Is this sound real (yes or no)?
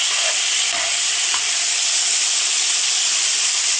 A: yes